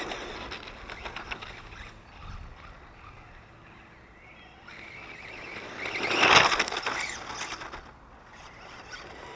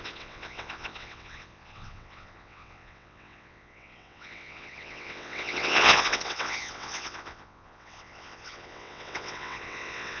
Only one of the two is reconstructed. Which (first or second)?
second